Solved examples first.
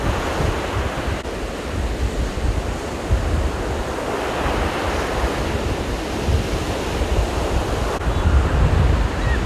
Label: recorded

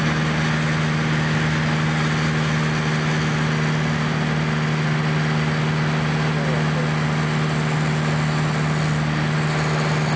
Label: recorded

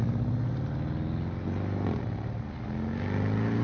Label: recorded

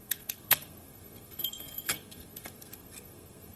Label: remade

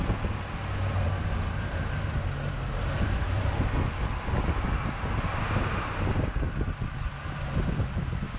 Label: recorded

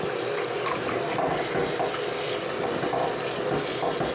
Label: recorded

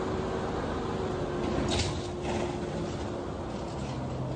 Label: recorded